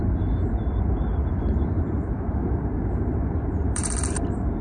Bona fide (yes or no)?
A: no